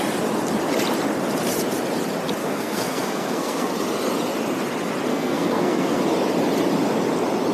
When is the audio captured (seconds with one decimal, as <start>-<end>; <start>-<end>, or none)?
0.0-2.4; 3.7-5.1; 6.0-7.5